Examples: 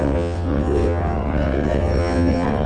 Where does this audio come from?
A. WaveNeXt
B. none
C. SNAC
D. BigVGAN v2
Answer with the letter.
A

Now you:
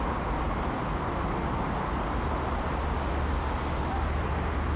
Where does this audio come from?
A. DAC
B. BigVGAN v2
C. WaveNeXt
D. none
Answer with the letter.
D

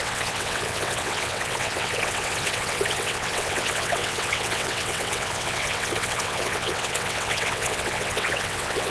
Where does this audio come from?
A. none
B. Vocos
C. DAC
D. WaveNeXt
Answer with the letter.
D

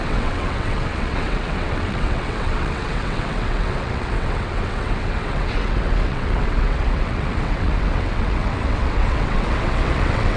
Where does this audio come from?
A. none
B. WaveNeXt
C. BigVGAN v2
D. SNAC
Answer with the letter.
B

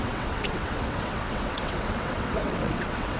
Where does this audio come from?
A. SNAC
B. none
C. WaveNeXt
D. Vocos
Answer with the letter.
C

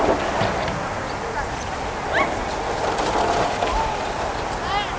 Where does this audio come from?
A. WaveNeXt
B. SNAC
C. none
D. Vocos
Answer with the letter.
C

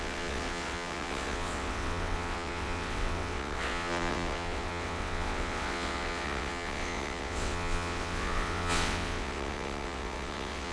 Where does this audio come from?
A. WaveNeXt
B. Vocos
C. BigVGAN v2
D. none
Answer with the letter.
A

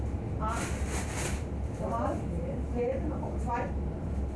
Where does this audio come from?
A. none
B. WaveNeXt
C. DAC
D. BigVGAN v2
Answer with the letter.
A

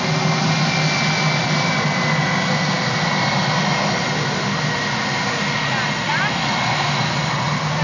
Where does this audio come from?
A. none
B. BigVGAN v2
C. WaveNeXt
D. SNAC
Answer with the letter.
A